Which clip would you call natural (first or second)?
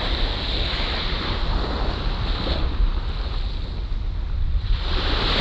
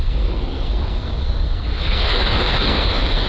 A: first